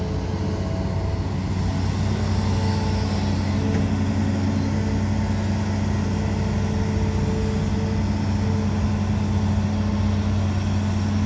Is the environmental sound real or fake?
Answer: real